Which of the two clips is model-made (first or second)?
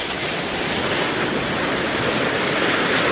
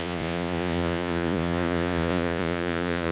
second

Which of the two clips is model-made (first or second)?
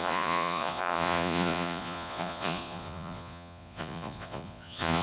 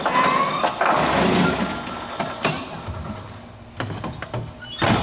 first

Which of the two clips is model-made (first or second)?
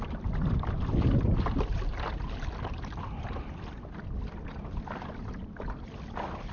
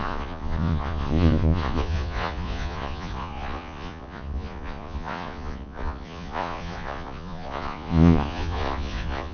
second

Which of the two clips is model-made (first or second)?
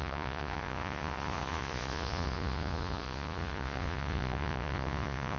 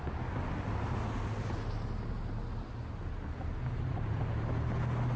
first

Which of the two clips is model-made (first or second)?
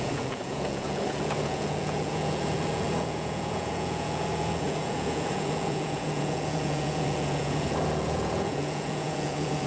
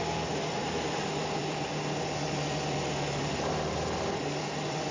first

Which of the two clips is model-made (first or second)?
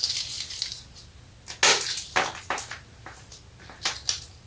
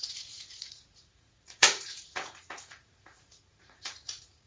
second